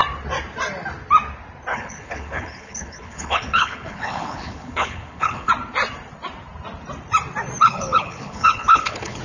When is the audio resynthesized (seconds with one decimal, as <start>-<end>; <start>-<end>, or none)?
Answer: 1.7-5.5; 7.6-9.2